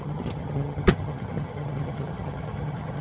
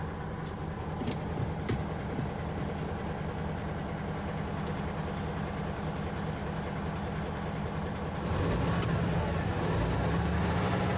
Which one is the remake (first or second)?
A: first